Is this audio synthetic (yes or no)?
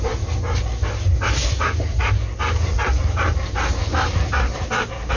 no